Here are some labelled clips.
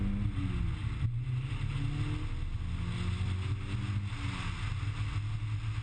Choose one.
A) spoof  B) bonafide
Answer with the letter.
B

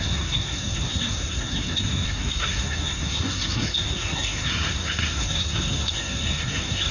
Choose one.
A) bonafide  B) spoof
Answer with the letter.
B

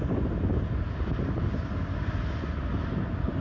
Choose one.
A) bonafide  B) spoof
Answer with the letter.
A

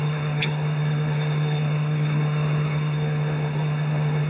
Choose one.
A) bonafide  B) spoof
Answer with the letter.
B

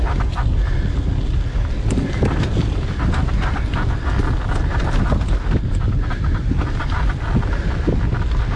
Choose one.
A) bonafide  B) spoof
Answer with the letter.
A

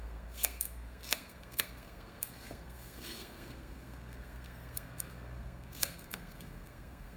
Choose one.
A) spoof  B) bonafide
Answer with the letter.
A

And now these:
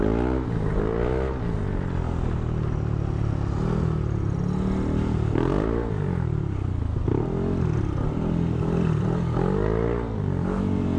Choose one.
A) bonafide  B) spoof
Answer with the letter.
A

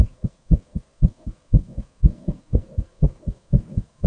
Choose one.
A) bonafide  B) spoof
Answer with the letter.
B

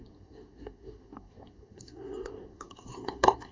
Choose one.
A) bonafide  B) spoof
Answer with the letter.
B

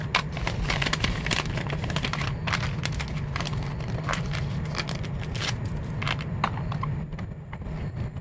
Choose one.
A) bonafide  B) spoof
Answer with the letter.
A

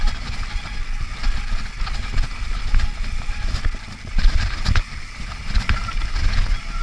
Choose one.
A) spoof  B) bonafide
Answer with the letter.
B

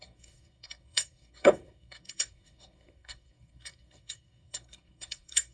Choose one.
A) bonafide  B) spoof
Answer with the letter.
B